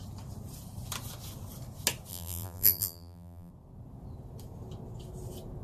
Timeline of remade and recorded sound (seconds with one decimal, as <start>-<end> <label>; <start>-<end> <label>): 0.0-2.1 recorded; 2.1-3.5 remade; 3.5-5.6 recorded